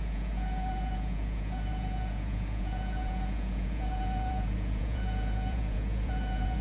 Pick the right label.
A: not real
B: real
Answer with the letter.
A